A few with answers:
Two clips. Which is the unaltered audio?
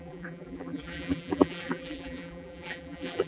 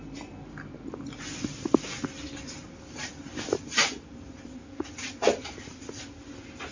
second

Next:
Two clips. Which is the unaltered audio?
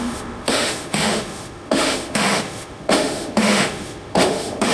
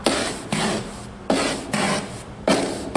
second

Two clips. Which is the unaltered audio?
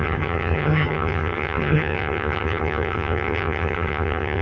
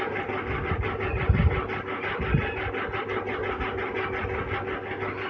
second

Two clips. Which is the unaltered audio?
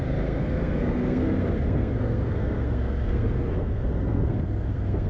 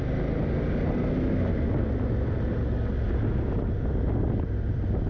second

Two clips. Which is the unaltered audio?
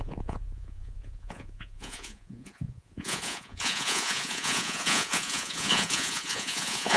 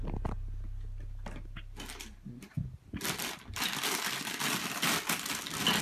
second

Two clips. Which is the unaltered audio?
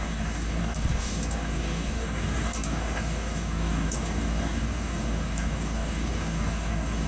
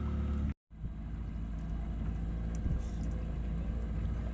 second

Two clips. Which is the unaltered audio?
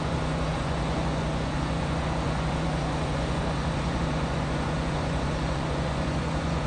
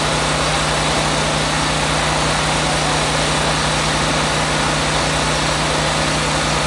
second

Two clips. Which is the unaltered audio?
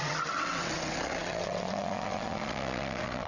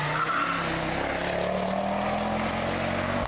second